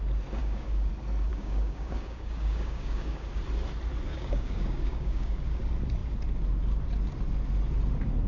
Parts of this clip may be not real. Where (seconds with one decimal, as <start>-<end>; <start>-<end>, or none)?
0.4-0.9; 1.3-3.4; 4.1-5.6